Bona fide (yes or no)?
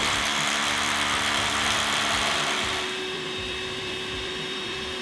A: no